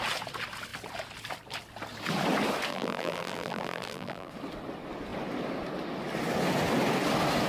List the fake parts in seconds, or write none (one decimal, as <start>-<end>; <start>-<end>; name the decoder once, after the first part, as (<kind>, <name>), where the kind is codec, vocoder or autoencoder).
2.7-4.3 (vocoder, BigVGAN v2)